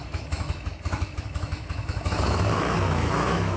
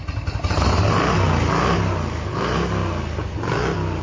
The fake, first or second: first